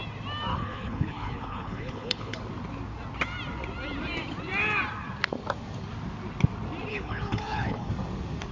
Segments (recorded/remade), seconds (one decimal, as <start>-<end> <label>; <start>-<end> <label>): 0.0-0.5 recorded; 0.5-2.4 remade; 2.4-6.9 recorded; 6.9-7.9 remade; 7.9-8.5 recorded